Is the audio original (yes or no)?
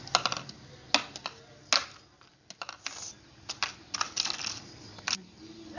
yes